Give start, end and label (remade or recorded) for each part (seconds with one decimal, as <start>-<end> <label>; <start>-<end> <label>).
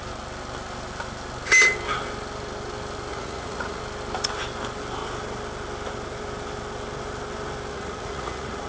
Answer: 0.0-3.1 recorded; 3.1-3.8 remade; 3.8-7.7 recorded; 7.7-8.7 remade